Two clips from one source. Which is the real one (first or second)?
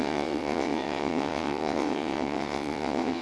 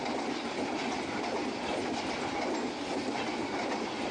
second